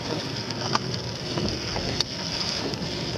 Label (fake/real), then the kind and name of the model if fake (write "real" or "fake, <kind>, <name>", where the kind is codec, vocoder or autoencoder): fake, codec, SNAC